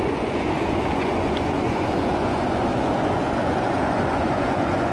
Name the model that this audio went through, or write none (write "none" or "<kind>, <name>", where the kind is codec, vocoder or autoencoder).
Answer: vocoder, Vocos